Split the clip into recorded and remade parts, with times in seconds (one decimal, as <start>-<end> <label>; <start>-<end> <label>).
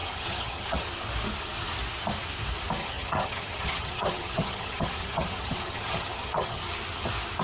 0.0-0.9 remade; 0.9-2.8 recorded; 2.8-6.6 remade; 6.6-7.4 recorded